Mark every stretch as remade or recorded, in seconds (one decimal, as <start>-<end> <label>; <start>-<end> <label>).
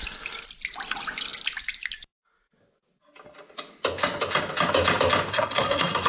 0.0-5.3 recorded; 5.3-6.1 remade